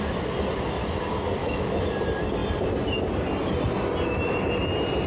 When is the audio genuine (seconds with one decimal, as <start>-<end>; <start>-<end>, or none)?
0.0-1.4; 1.9-5.1